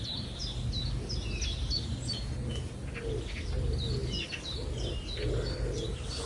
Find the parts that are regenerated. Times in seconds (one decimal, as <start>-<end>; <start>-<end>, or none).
none